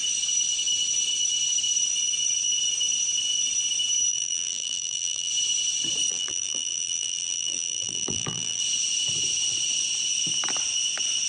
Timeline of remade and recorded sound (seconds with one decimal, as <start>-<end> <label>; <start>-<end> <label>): 0.0-4.1 recorded; 4.1-5.3 remade; 5.3-6.1 recorded; 6.1-8.6 remade; 8.6-11.3 recorded